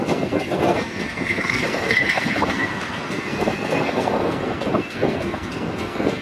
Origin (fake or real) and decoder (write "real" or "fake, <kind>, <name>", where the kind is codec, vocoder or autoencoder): fake, codec, SNAC